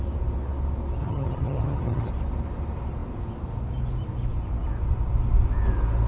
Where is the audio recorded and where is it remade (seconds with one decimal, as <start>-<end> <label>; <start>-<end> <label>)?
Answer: 0.0-1.0 recorded; 1.0-2.1 remade; 2.1-6.1 recorded